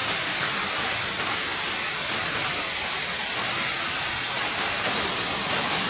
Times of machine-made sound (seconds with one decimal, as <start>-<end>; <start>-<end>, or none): none